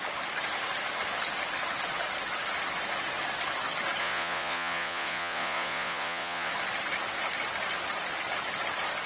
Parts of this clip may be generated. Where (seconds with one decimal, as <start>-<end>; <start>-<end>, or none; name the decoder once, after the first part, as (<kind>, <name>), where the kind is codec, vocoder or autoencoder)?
4.0-6.5 (vocoder, Vocos)